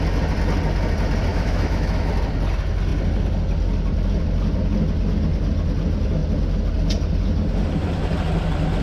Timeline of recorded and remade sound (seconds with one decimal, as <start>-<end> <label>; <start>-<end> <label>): 0.0-1.3 recorded; 1.3-2.1 remade; 2.1-8.8 recorded